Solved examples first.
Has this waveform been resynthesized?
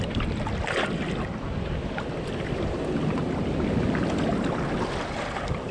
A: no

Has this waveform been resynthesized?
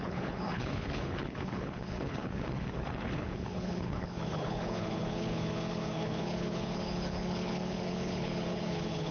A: yes